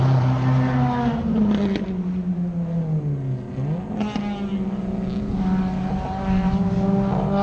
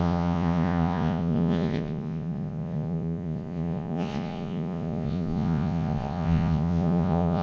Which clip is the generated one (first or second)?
second